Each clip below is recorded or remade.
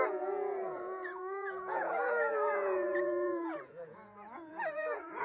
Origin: remade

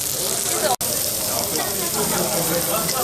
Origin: recorded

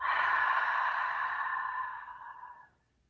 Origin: recorded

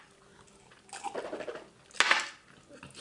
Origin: recorded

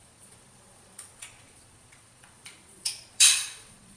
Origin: remade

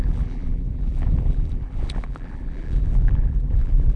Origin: remade